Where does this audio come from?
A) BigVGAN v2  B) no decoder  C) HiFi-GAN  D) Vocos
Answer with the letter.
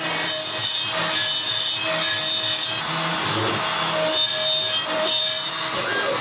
B